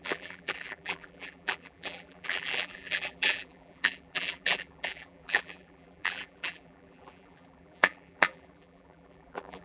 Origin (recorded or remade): remade